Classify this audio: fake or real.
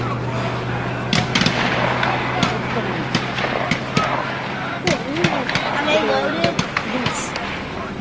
real